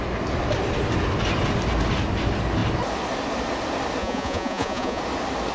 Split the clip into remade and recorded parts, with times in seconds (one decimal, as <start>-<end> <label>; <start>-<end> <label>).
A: 0.0-4.0 recorded; 4.0-5.0 remade; 5.0-5.5 recorded